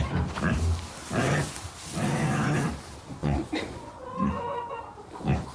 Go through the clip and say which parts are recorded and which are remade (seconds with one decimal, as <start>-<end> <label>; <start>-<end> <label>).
0.0-3.2 recorded; 3.2-4.7 remade; 4.7-5.5 recorded